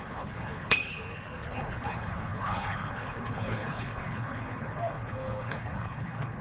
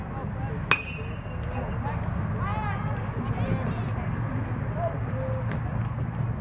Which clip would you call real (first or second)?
second